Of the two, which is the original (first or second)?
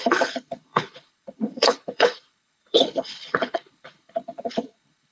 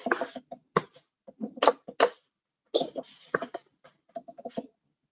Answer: second